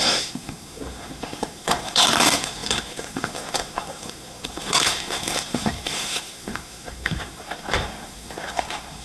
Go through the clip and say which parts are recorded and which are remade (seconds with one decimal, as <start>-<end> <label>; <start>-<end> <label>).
0.0-9.0 remade